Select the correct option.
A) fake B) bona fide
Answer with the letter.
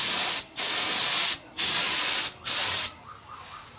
B